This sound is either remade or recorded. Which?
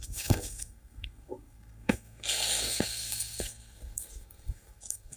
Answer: remade